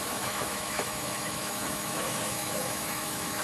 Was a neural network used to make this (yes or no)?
yes